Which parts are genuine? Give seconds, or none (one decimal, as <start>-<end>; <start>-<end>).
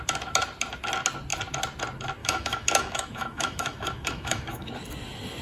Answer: 0.0-2.2; 4.7-5.4